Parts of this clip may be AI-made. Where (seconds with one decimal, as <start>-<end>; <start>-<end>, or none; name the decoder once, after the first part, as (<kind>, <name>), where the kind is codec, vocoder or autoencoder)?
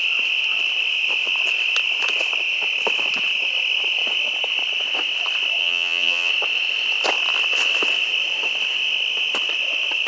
5.6-6.3 (vocoder, HiFi-GAN)